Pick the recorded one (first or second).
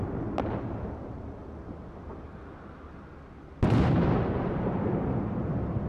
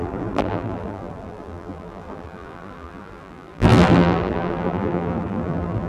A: first